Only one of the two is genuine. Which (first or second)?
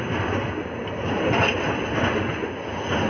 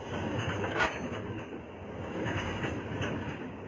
first